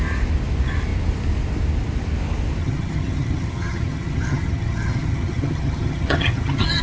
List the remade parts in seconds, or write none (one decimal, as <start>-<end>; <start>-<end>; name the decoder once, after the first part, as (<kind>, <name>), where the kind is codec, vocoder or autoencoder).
2.6-6.8 (vocoder, HiFi-GAN)